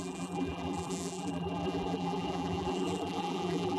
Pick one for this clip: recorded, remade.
remade